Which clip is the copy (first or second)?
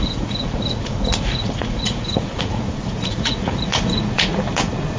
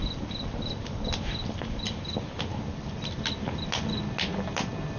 first